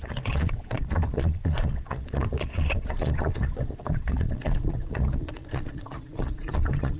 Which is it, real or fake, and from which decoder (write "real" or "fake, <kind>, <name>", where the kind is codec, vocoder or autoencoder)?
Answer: fake, vocoder, Vocos